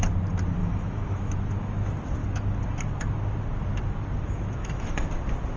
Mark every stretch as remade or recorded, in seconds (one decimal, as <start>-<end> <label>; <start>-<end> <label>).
0.0-0.6 recorded; 0.6-1.3 remade; 1.3-4.6 recorded; 4.6-5.1 remade; 5.1-5.6 recorded